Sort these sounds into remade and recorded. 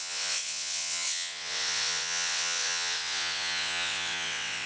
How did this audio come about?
remade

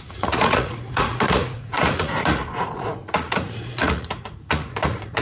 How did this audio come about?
remade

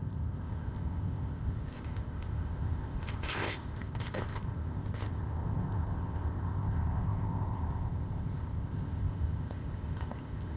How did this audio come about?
remade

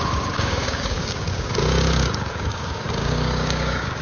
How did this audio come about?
remade